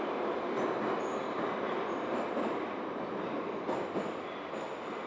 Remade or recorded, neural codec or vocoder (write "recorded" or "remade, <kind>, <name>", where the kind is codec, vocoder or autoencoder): recorded